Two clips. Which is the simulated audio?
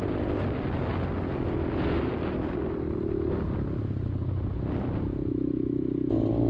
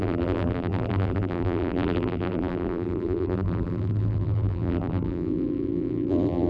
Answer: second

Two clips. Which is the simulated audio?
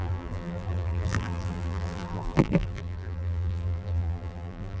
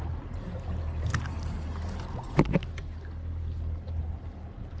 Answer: first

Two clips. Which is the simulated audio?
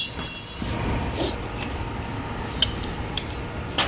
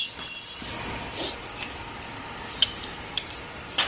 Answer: second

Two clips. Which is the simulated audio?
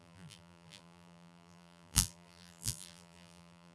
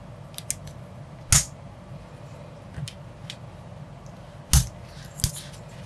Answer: first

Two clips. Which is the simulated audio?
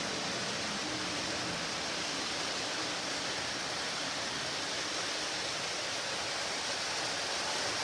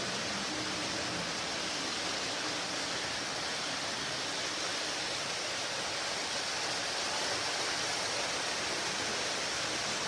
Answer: first